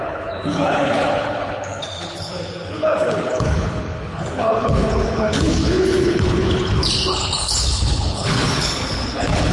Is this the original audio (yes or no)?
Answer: no